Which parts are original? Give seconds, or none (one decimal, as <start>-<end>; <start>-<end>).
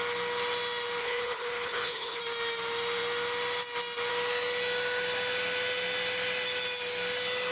0.0-1.0; 2.2-7.5